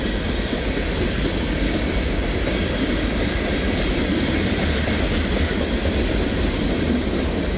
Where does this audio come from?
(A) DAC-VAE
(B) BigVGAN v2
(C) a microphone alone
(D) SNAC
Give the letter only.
C